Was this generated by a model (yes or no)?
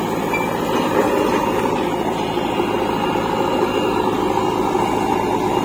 no